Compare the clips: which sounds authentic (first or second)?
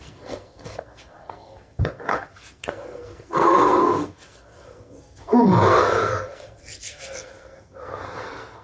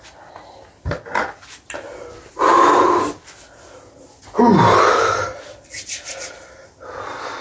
second